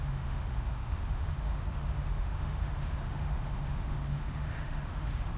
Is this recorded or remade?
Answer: remade